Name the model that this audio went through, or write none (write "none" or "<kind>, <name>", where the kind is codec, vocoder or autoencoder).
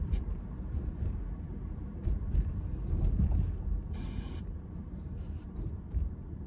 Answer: vocoder, BigVGAN v2